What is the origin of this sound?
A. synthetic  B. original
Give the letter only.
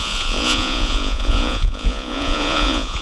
A